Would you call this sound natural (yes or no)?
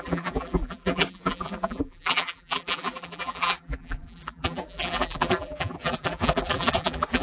no